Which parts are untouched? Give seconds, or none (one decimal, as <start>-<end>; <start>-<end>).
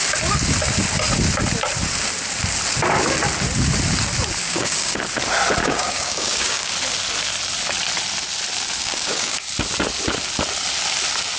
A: 0.0-4.4; 5.0-5.6; 6.7-8.8; 9.5-11.4